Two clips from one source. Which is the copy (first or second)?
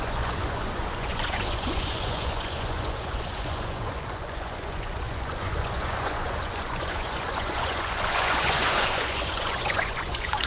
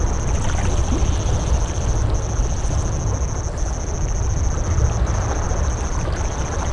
first